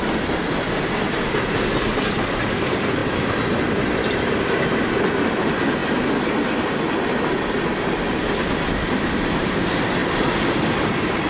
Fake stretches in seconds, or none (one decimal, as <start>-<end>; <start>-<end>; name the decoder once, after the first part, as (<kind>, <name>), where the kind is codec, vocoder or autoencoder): 10.0-11.3 (vocoder, BigVGAN v2)